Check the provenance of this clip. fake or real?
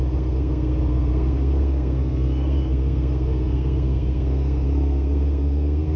fake